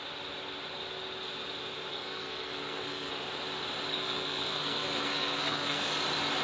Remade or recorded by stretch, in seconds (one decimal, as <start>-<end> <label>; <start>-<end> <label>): 0.0-1.9 recorded; 1.9-3.1 remade; 3.1-3.9 recorded; 3.9-5.9 remade; 5.9-6.4 recorded

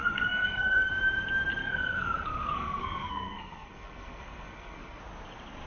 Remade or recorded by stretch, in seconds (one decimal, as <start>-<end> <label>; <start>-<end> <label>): 0.0-0.9 remade; 0.9-1.6 recorded; 1.6-5.0 remade; 5.0-5.7 recorded

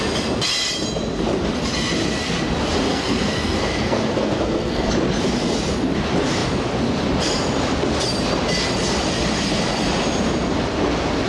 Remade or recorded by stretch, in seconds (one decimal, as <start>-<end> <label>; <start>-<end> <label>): 0.0-2.9 recorded; 2.9-4.9 remade; 4.9-11.3 recorded

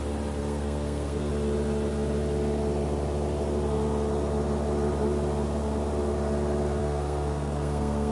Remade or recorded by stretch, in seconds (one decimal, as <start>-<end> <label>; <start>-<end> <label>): 0.0-0.4 recorded; 0.4-1.3 remade; 1.3-6.8 recorded; 6.8-8.1 remade

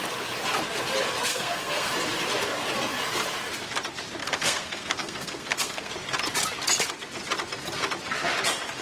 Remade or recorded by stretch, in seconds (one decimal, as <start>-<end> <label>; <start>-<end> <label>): 0.0-1.3 recorded; 1.3-1.9 remade; 1.9-4.2 recorded; 4.2-5.9 remade; 5.9-8.8 recorded

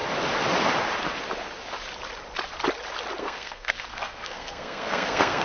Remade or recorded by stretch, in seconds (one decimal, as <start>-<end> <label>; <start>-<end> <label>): 0.0-3.2 recorded; 3.2-5.4 remade

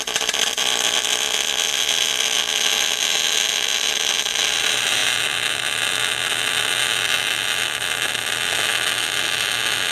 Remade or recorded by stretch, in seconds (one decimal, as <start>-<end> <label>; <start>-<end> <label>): 0.0-9.9 recorded

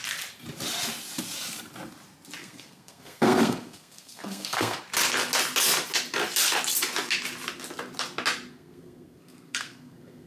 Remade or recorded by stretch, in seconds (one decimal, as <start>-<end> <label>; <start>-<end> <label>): 0.0-2.4 recorded; 2.4-4.8 remade; 4.8-8.5 recorded; 8.5-10.3 remade